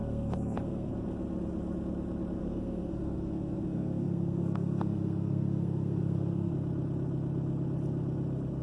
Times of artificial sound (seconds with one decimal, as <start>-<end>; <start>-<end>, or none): 0.0-0.9; 2.4-6.5